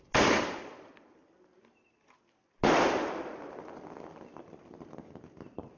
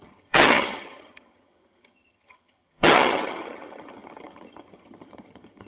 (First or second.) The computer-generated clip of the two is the second